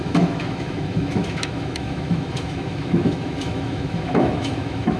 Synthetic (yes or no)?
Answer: yes